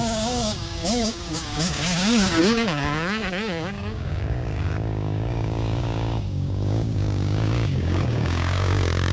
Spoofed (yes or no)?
yes